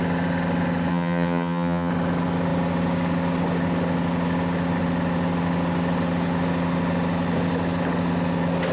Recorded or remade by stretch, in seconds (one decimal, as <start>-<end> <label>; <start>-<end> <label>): 0.0-0.9 recorded; 0.9-1.9 remade; 1.9-8.7 recorded